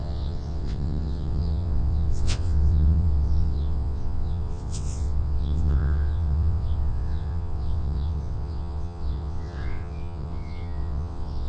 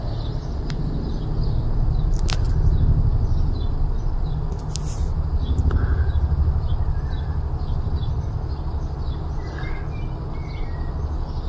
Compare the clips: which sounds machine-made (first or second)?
first